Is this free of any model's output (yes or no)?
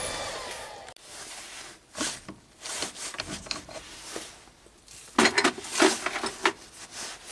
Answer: yes